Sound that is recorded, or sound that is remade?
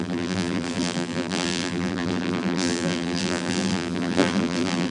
remade